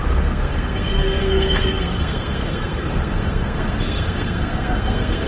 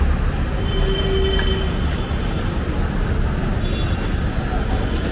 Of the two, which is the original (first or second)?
second